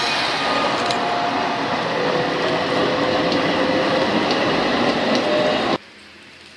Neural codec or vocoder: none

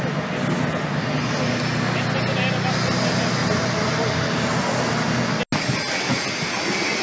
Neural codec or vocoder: none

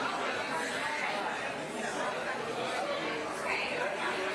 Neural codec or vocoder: none